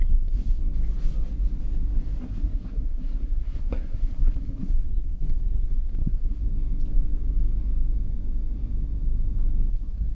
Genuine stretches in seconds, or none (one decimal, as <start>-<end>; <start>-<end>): 0.6-2.2; 6.4-9.7